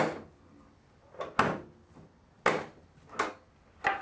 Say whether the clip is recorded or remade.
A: recorded